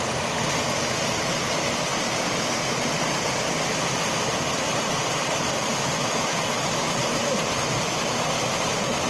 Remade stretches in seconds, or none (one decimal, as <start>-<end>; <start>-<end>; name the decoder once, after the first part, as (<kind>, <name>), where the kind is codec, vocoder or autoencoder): none